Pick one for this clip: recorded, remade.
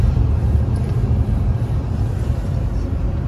remade